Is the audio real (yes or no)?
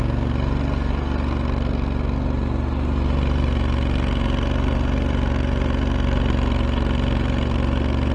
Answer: yes